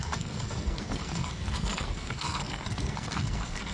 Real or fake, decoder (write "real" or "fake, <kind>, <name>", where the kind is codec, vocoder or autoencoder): fake, codec, SNAC